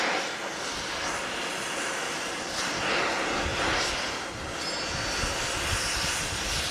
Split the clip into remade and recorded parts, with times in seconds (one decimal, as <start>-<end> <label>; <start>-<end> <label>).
0.0-6.7 recorded